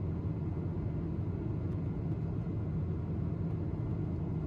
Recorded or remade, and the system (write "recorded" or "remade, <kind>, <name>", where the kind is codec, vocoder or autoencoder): recorded